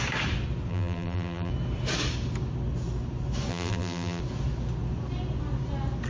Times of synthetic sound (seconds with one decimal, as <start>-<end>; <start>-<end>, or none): 0.7-1.5; 3.5-4.2